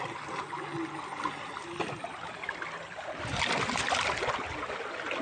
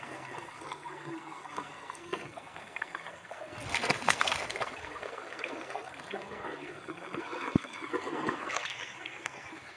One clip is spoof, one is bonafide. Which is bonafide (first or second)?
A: first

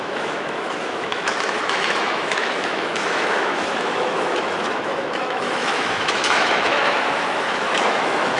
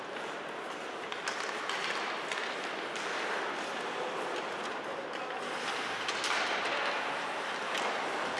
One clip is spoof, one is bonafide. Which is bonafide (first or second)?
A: second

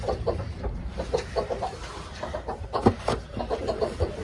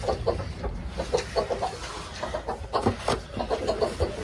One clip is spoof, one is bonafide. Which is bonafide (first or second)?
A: second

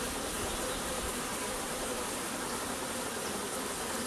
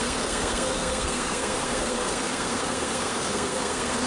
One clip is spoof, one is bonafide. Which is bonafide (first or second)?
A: first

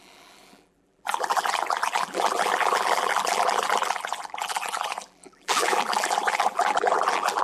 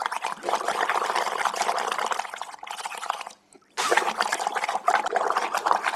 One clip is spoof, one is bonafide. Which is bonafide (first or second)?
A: second